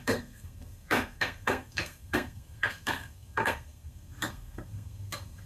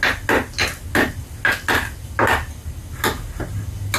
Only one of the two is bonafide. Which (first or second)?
second